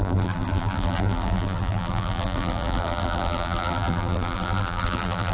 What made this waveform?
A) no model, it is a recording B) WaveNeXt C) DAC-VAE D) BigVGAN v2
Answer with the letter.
D